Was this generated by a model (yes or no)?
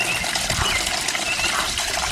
no